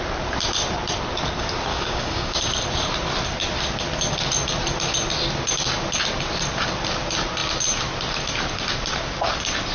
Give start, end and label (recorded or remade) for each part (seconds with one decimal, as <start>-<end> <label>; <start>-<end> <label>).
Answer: 0.0-1.7 recorded; 1.7-2.5 remade; 2.5-9.7 recorded